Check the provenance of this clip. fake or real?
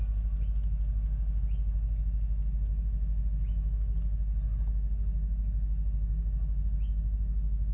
real